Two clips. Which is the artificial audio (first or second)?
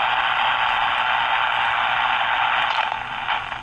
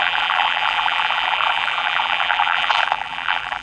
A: second